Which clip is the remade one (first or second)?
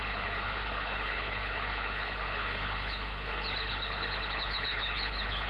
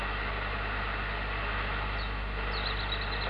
first